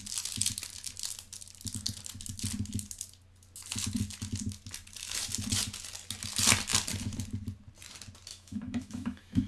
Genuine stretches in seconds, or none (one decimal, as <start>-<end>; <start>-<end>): 0.0-8.3